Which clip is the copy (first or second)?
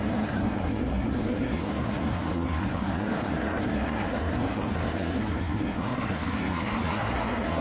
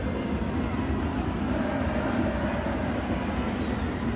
first